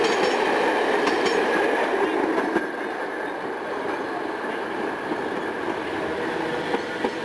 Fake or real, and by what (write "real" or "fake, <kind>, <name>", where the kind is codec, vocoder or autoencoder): real